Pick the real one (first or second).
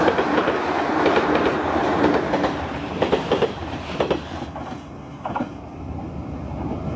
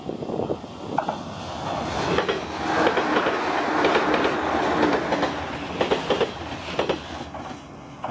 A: second